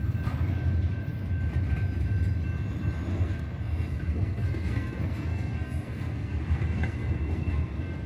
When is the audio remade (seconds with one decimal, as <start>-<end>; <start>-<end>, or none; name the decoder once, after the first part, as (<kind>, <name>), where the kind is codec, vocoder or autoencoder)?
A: 3.1-8.1 (codec, SNAC)